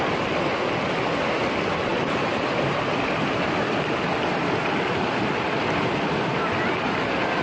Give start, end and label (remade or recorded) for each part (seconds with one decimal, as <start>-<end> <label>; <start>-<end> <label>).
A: 0.0-7.4 recorded